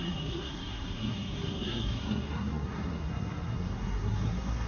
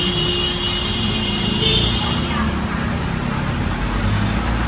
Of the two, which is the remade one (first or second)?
first